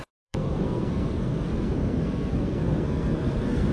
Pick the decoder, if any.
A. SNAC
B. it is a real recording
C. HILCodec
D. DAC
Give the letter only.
A